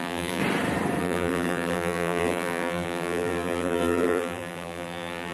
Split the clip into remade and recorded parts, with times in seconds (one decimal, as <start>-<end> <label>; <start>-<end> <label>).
0.0-0.4 remade; 0.4-1.0 recorded; 1.0-5.3 remade